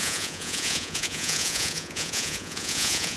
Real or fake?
fake